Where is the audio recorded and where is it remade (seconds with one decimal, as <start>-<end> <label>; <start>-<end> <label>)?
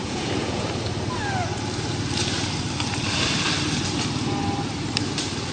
0.0-0.6 remade; 0.6-5.5 recorded